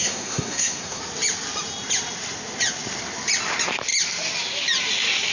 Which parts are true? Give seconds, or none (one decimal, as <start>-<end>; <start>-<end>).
1.0-5.3

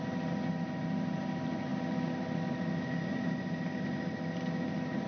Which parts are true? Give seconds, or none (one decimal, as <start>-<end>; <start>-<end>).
0.0-5.1

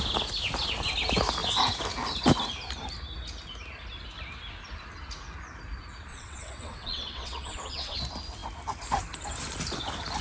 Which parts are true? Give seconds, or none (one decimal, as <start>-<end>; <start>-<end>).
0.0-6.1; 8.0-10.2

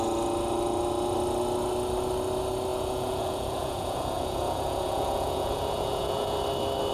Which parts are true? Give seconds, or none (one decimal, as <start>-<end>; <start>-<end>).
0.0-2.7; 6.4-6.9

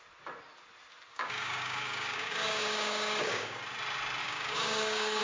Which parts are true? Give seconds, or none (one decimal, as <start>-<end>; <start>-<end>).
0.0-1.1; 3.6-4.2

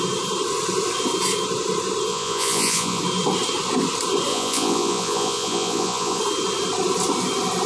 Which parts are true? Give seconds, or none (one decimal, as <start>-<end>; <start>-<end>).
0.0-2.1; 3.0-4.3; 6.2-7.7

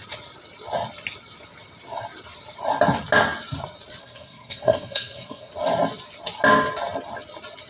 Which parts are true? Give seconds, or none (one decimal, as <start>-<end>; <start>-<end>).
0.0-4.0; 5.5-7.7